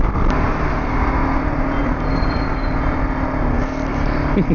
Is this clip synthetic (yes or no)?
no